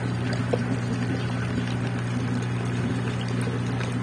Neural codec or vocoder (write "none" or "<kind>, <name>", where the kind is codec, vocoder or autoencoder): none